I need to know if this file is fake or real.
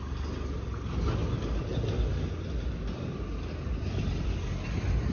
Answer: real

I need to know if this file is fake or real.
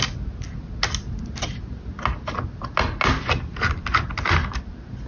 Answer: real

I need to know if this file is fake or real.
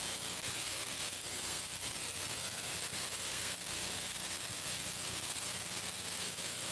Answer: fake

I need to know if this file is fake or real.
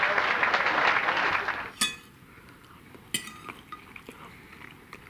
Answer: real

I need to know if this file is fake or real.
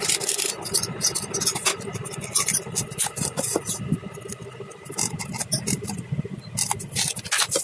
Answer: real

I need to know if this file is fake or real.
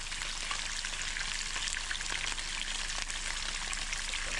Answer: real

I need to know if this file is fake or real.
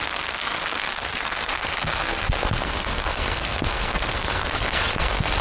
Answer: fake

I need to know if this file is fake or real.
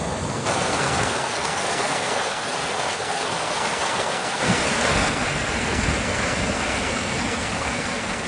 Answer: fake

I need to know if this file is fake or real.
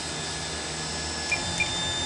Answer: real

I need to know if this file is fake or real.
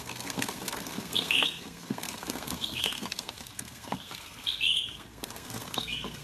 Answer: fake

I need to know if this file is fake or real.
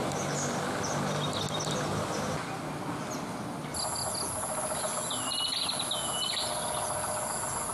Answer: real